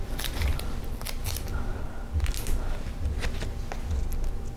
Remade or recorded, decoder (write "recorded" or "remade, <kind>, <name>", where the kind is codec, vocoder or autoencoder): recorded